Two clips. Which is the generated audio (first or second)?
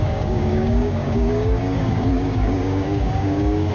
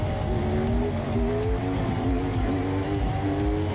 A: first